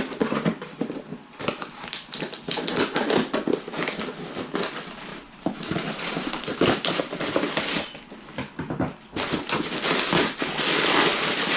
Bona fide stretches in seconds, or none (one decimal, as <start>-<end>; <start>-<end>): 0.0-5.1; 6.9-11.6